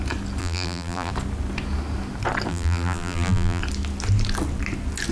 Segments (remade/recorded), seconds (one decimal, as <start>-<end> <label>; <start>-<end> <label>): 0.0-0.4 recorded; 0.4-1.1 remade; 1.1-2.5 recorded; 2.5-3.6 remade; 3.6-5.1 recorded